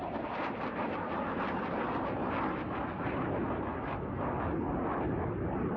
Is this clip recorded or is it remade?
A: recorded